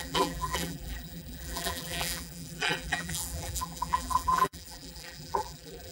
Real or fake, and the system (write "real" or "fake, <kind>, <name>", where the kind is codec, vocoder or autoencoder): fake, vocoder, BigVGAN v2